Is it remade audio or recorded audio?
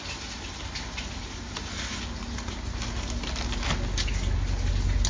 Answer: recorded